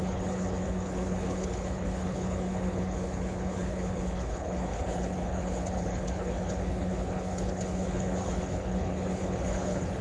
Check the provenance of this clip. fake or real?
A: fake